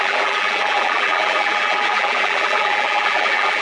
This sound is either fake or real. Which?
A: fake